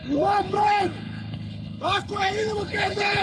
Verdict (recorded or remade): remade